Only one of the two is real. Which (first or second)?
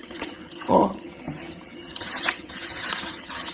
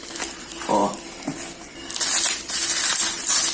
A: second